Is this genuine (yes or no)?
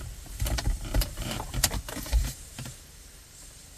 no